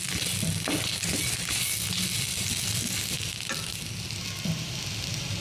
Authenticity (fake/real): real